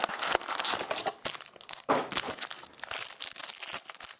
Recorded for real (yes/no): yes